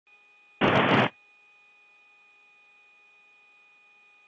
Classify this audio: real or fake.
real